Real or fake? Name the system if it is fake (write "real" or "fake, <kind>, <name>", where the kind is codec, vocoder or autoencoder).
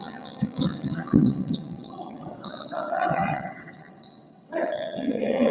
fake, vocoder, WaveNeXt